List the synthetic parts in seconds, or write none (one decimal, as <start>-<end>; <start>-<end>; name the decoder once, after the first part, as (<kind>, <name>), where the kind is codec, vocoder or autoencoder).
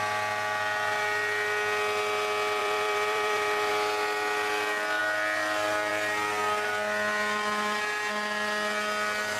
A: 2.6-3.7 (vocoder, BigVGAN v2)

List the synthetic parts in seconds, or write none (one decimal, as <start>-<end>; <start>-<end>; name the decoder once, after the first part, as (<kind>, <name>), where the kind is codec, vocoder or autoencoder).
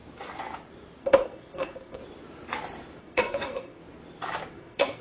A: 1.0-2.0 (codec, SNAC); 3.0-3.8; 4.5-5.0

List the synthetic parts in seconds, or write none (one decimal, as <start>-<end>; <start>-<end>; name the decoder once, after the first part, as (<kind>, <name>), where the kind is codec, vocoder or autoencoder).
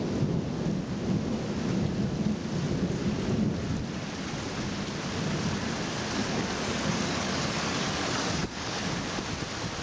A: 6.2-8.9 (codec, DAC)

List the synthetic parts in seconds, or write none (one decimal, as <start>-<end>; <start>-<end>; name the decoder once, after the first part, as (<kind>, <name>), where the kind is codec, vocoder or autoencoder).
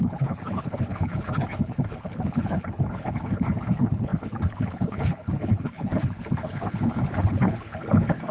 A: 0.0-8.3 (codec, HILCodec)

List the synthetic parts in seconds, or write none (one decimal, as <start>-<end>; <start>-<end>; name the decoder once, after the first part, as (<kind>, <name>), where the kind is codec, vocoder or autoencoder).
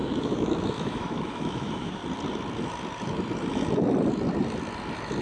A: 0.0-2.0 (autoencoder, DAC-VAE)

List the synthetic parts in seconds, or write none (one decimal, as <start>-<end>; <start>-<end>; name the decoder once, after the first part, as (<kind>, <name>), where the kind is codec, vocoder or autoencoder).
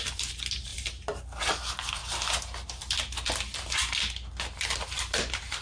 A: none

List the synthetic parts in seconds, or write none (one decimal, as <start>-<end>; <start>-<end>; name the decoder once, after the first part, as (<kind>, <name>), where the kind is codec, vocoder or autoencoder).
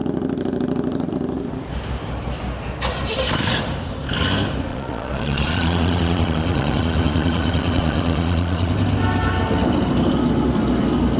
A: 4.7-8.7 (vocoder, Vocos)